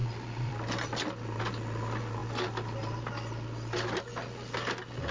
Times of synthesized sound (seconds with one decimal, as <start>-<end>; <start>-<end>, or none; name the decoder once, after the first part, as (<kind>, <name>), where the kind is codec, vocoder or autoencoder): none